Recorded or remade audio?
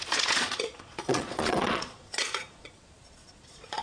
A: remade